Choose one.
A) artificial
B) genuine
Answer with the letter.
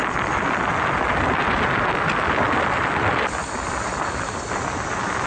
B